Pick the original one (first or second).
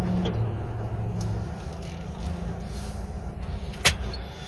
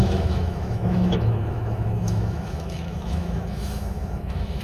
first